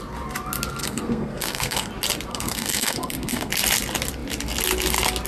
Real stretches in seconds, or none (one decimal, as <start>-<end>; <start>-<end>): 0.0-0.8; 1.9-2.3; 3.5-5.3